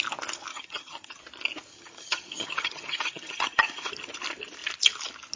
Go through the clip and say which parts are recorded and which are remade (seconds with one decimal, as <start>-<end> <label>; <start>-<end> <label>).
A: 0.0-0.5 recorded; 0.5-1.2 remade; 1.2-1.7 recorded; 1.7-3.9 remade; 3.9-5.4 recorded